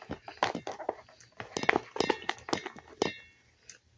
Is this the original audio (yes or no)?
yes